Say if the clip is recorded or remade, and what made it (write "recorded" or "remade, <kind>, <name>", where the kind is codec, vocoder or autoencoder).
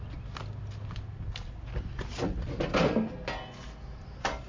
recorded